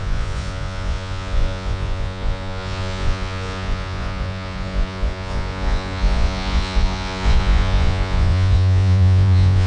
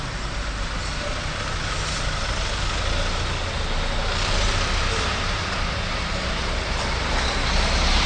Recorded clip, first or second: second